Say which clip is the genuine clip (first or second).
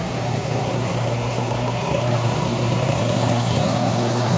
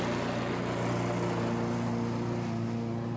second